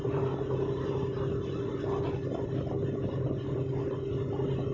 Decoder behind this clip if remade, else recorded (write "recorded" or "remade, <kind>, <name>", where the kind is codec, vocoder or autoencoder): recorded